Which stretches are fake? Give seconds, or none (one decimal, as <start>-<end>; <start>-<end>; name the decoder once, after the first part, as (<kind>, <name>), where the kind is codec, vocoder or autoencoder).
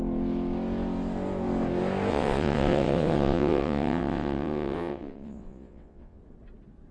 2.1-6.2 (vocoder, WaveNeXt)